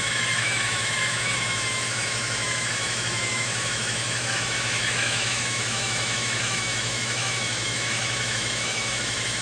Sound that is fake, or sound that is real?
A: fake